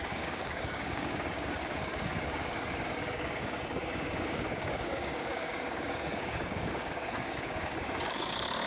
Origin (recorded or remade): remade